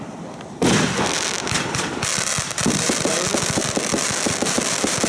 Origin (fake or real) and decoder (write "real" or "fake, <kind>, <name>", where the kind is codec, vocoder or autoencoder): fake, vocoder, BigVGAN v2